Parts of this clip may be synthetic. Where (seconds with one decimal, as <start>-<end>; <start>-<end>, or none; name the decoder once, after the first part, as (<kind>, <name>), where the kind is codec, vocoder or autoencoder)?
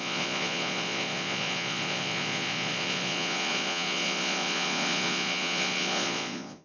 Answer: 0.0-6.6 (vocoder, Vocos)